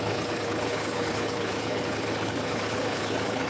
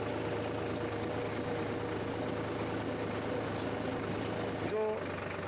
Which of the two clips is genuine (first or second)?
second